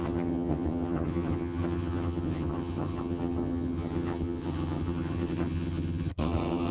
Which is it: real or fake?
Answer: fake